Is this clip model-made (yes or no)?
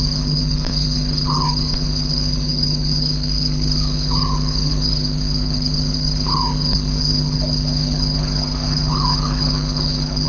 yes